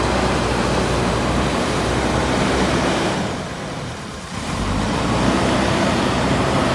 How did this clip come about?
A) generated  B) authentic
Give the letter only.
A